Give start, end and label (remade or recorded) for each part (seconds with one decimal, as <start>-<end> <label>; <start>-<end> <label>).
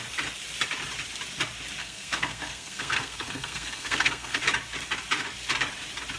0.0-1.8 recorded; 1.8-4.4 remade; 4.4-6.2 recorded